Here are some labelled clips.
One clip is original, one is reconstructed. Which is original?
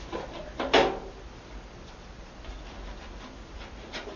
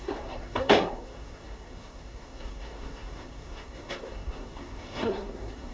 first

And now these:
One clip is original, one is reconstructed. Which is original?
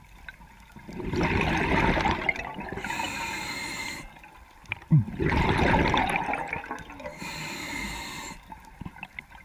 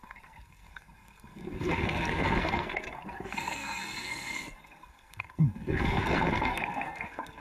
first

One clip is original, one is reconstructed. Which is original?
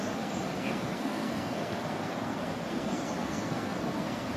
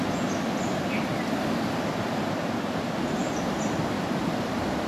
second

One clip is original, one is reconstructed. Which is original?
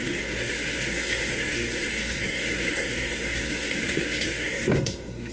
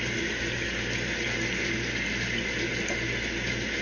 second